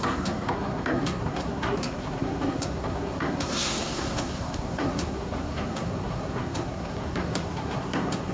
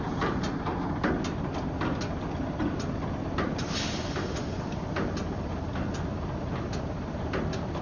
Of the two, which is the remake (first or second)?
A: first